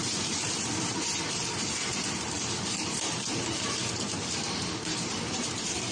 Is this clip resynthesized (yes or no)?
yes